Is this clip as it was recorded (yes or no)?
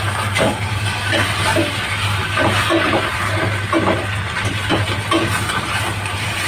yes